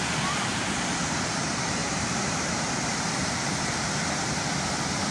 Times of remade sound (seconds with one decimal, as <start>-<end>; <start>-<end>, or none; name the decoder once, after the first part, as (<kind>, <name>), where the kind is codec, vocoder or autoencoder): 0.5-1.4 (vocoder, BigVGAN v2); 1.8-4.4

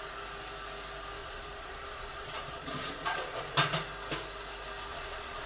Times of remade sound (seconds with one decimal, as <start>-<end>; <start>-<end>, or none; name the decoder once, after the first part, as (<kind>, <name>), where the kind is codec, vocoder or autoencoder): 1.2-3.4 (vocoder, Vocos); 4.9-5.5